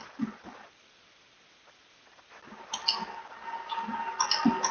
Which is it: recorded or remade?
recorded